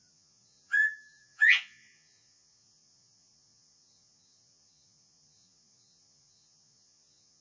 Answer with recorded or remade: remade